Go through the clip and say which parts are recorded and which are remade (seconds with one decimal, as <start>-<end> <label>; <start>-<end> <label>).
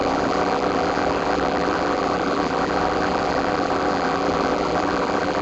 0.0-5.4 remade